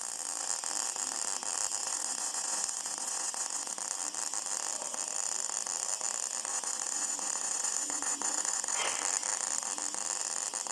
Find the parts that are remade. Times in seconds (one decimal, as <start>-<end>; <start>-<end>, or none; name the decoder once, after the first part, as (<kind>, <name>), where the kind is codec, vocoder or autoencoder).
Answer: 1.8-3.7 (vocoder, Vocos); 6.5-8.9